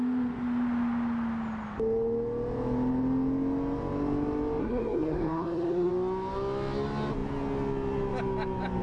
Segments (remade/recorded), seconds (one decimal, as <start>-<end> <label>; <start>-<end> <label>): 0.0-4.6 recorded; 4.6-5.9 remade; 5.9-8.8 recorded